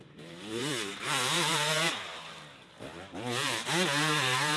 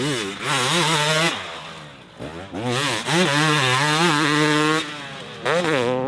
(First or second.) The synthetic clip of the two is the first